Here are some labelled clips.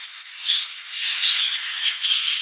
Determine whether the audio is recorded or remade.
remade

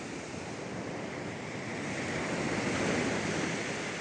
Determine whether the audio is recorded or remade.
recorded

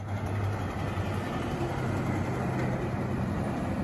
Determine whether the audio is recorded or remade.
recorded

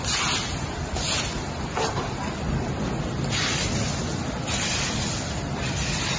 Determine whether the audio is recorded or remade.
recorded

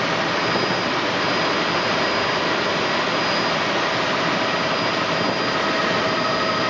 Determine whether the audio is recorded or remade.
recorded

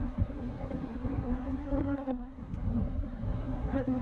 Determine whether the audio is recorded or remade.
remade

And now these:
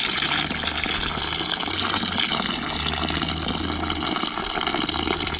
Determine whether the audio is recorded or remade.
recorded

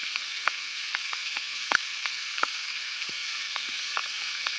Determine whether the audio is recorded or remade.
remade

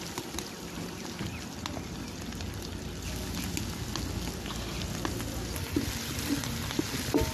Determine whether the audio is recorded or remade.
recorded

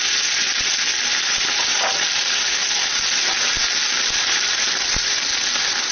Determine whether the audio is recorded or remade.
recorded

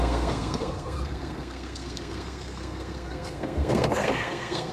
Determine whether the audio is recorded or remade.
remade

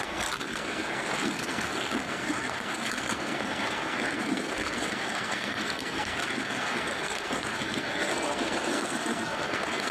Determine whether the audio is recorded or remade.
remade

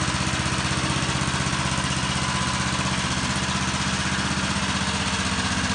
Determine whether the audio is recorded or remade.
recorded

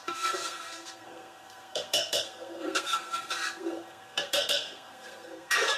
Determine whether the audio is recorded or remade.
remade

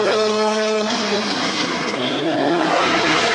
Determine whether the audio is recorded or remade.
remade